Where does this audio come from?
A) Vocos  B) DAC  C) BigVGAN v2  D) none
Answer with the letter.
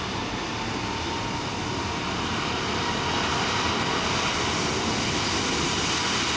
D